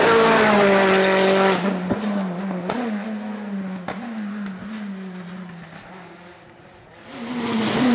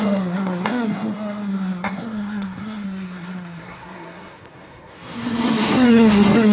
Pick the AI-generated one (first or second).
second